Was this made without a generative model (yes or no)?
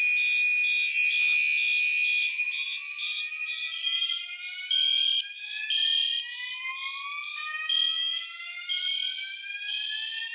yes